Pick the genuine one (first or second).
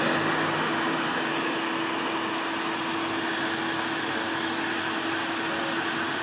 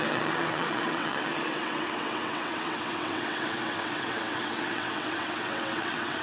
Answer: first